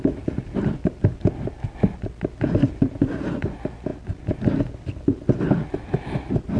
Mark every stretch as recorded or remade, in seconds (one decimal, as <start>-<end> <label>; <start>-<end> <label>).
0.0-6.6 recorded